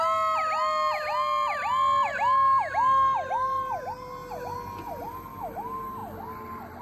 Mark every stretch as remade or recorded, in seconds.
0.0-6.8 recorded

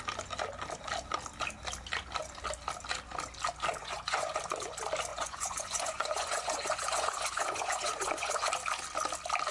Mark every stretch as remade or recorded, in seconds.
0.0-3.8 recorded; 3.8-4.3 remade; 4.3-5.1 recorded; 5.1-8.5 remade; 8.5-9.5 recorded

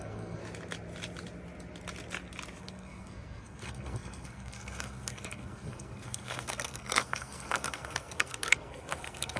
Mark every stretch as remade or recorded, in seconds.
0.0-0.4 remade; 0.4-2.6 recorded; 2.6-9.4 remade

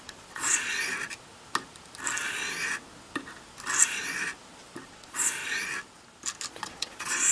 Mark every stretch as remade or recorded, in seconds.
0.0-0.7 remade; 0.7-4.9 recorded; 4.9-5.4 remade; 5.4-6.5 recorded; 6.5-7.3 remade

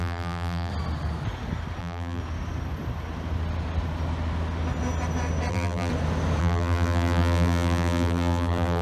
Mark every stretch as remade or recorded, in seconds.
0.0-0.7 remade; 0.7-1.8 recorded; 1.8-2.2 remade; 2.2-5.5 recorded; 5.5-5.9 remade; 5.9-6.4 recorded; 6.4-8.8 remade